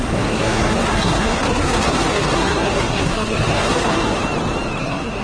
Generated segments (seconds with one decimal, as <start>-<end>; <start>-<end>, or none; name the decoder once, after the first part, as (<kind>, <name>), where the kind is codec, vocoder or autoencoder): 0.0-4.2 (codec, SNAC); 4.8-5.2